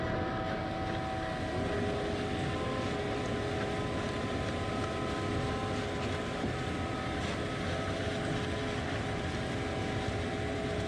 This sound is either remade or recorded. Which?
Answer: recorded